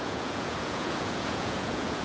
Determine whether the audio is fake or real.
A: fake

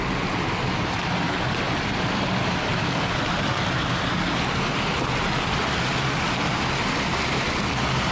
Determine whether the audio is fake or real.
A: real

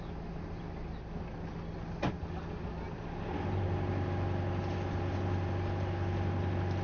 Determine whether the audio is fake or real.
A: real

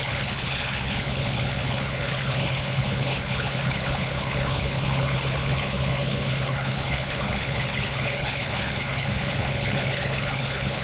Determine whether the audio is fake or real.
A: fake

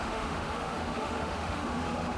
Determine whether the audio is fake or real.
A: fake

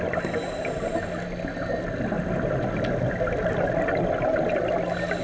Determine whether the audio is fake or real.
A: real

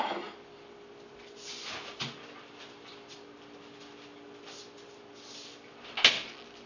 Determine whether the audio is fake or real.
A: real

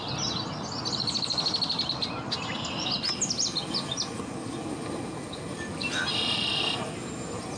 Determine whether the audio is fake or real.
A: real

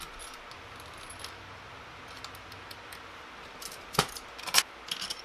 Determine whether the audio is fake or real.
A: real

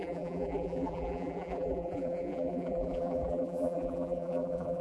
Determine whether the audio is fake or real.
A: fake